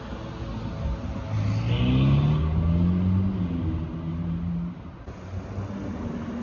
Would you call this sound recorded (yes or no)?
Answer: yes